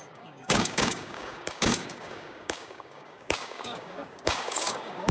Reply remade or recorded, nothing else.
remade